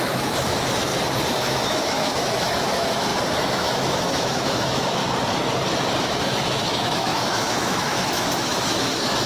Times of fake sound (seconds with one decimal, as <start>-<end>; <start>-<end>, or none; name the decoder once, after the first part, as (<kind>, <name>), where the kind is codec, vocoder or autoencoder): 0.0-0.9 (autoencoder, DAC-VAE); 1.4-3.1; 3.6-5.0; 6.0-9.3